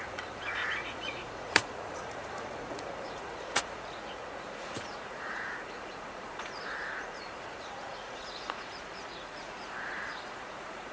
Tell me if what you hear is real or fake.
fake